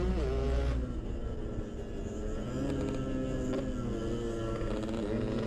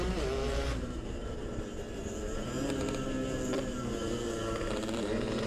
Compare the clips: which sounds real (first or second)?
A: first